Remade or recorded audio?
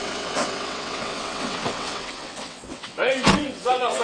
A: remade